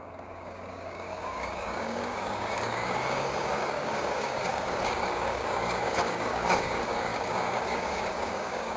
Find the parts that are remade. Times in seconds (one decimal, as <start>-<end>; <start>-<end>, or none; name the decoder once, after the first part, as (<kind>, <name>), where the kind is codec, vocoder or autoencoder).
0.0-8.8 (codec, DAC)